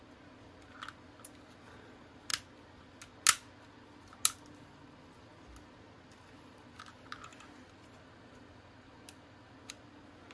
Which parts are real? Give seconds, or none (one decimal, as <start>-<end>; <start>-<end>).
0.0-10.3